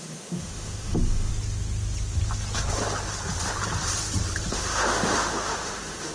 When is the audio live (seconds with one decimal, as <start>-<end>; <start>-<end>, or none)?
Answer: 1.3-4.5